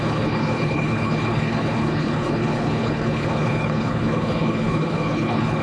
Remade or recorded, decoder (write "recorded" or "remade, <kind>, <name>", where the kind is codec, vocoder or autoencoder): remade, codec, HILCodec